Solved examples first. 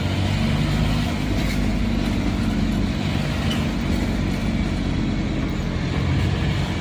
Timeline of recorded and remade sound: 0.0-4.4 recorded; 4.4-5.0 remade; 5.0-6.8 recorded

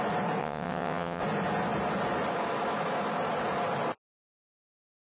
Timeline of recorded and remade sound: 0.0-0.4 recorded; 0.4-1.2 remade; 1.2-5.1 recorded

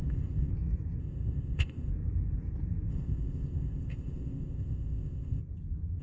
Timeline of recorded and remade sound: 0.0-0.5 remade; 0.5-1.0 recorded; 1.0-1.9 remade; 1.9-2.9 recorded; 2.9-5.4 remade; 5.4-6.0 recorded

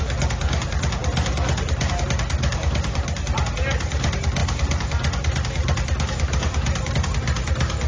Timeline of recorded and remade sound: 0.0-7.9 recorded

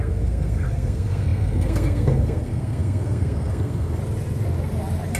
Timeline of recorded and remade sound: 0.0-4.0 remade; 4.0-5.2 recorded

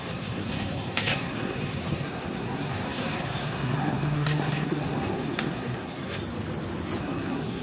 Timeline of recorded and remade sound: 0.0-6.2 remade; 6.2-7.0 recorded; 7.0-7.6 remade

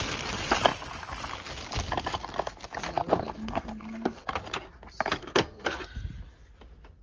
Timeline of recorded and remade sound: 0.0-3.1 recorded; 3.1-4.2 remade; 4.2-5.2 recorded; 5.2-5.8 remade; 5.8-7.0 recorded

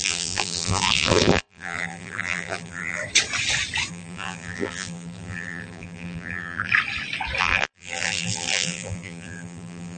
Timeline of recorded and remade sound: 0.0-3.0 remade; 3.0-3.9 recorded; 3.9-6.7 remade; 6.7-7.4 recorded; 7.4-10.0 remade